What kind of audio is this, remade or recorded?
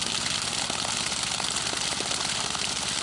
recorded